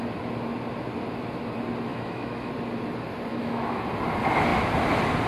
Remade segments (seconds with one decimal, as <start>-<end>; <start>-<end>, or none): 1.9-2.5; 3.3-3.8